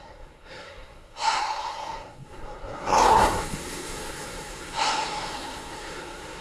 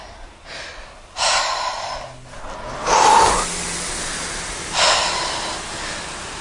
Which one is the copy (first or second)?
first